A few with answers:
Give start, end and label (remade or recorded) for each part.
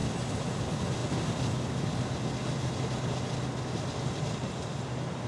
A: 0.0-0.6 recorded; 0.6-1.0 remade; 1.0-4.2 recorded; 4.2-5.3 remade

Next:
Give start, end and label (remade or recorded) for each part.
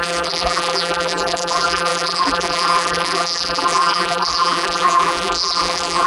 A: 0.0-6.1 remade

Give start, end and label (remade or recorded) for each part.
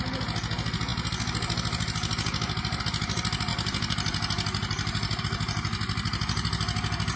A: 0.0-7.2 recorded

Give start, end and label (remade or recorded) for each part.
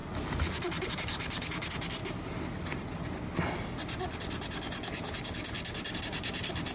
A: 0.0-0.9 recorded; 0.9-2.0 remade; 2.0-6.0 recorded; 6.0-6.7 remade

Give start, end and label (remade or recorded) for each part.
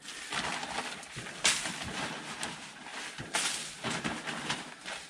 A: 0.0-5.1 recorded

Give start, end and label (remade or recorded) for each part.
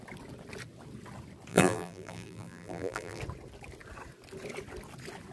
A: 0.0-1.5 recorded; 1.5-3.2 remade; 3.2-5.3 recorded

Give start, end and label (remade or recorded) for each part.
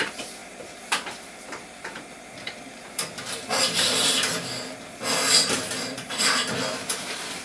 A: 0.0-4.3 remade; 4.3-5.4 recorded; 5.4-7.4 remade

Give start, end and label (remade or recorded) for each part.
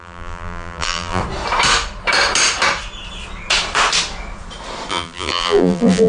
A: 0.0-1.2 remade; 1.2-4.9 recorded; 4.9-6.1 remade